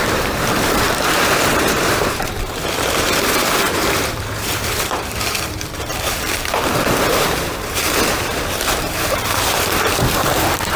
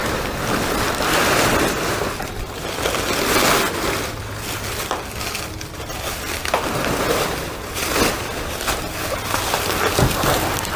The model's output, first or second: first